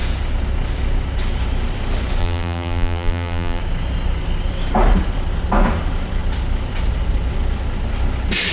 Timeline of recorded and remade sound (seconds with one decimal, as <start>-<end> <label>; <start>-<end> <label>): 0.0-2.2 recorded; 2.2-3.6 remade; 3.6-8.5 recorded